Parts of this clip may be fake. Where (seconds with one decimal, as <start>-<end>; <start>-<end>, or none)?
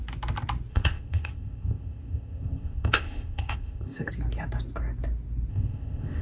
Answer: 0.7-4.1; 5.5-6.2